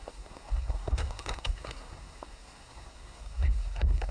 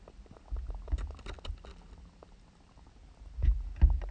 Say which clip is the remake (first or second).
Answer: first